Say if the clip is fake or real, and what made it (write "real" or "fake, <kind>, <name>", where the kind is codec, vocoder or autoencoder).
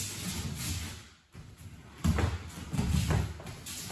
real